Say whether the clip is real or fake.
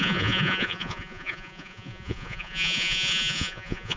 fake